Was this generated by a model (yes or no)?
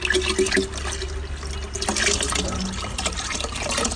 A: no